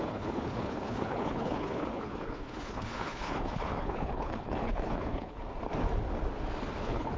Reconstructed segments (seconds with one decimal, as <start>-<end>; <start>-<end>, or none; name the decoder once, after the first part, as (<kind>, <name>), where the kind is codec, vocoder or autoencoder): 0.0-5.4 (codec, HILCodec); 6.8-7.2